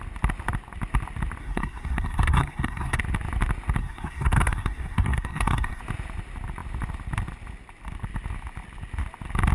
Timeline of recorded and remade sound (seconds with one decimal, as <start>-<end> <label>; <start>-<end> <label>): 0.0-1.4 recorded; 1.4-3.0 remade; 3.0-3.8 recorded; 3.8-5.8 remade; 5.8-9.5 recorded